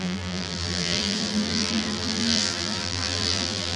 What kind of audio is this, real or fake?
fake